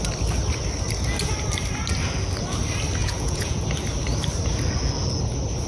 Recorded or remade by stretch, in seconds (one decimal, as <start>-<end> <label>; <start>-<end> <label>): 0.0-3.0 recorded; 3.0-3.6 remade; 3.6-5.7 recorded